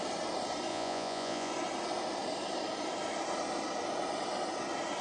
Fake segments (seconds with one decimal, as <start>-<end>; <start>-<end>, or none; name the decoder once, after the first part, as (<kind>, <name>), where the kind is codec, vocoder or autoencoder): 0.7-1.5 (vocoder, Vocos)